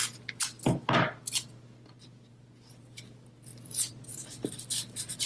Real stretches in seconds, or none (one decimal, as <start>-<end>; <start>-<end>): 0.0-3.5